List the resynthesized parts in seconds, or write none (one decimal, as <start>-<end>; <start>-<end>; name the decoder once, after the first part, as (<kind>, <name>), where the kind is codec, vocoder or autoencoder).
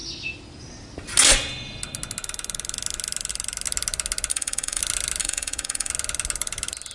4.3-4.8 (autoencoder, DAC-VAE); 5.2-5.9